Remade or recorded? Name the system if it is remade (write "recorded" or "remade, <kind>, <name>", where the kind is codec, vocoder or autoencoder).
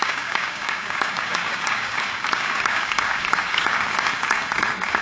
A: remade, codec, DAC